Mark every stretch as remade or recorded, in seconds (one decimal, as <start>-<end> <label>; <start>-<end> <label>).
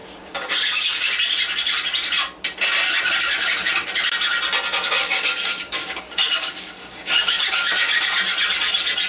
0.0-1.1 remade; 1.1-5.0 recorded; 5.0-8.0 remade; 8.0-9.1 recorded